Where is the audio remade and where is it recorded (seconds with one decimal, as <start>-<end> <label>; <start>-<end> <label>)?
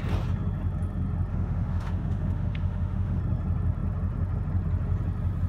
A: 0.0-1.3 recorded; 1.3-3.2 remade; 3.2-5.5 recorded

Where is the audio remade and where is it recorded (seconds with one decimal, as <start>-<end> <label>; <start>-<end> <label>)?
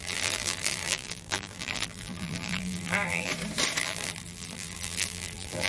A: 0.0-3.3 remade; 3.3-3.8 recorded; 3.8-5.7 remade